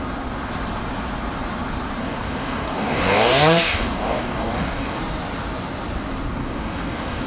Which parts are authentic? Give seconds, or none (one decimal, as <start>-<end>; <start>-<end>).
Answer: 0.0-2.0; 5.0-6.4